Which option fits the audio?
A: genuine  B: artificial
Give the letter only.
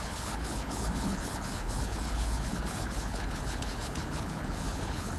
B